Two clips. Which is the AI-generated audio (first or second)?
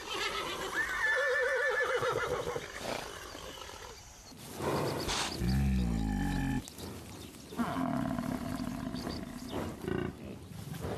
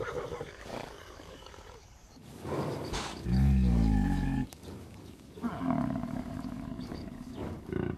second